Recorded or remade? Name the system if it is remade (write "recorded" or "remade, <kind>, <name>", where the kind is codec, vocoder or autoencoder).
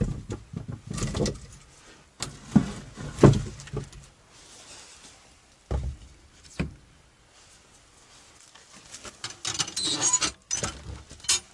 recorded